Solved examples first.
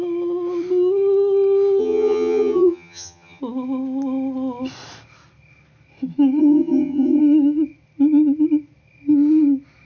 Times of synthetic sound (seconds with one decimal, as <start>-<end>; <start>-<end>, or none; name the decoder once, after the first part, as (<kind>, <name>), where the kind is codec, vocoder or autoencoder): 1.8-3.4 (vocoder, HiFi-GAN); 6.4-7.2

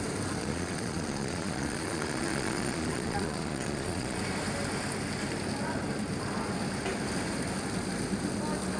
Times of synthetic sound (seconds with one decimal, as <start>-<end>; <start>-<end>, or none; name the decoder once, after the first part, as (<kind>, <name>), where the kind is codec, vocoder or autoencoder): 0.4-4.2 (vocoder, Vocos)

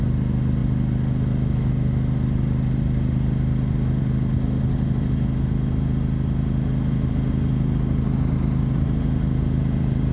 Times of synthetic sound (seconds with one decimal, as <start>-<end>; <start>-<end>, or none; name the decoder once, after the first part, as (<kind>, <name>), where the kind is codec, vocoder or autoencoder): none